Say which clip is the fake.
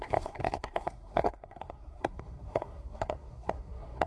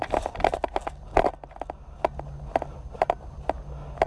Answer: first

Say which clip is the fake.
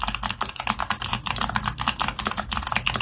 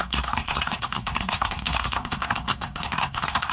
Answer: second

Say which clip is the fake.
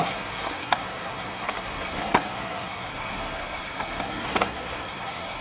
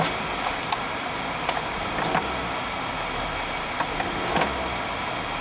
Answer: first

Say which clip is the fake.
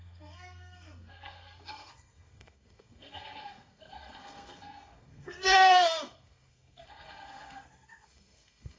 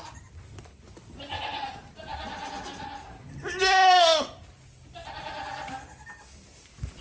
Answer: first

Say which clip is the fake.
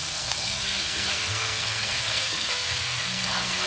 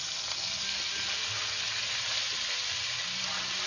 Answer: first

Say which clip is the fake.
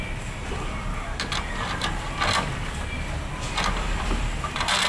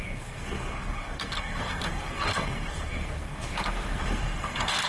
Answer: second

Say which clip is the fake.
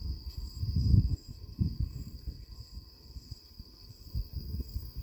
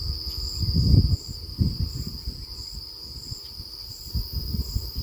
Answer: first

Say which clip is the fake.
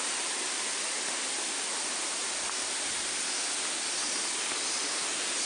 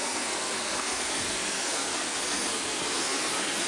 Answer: second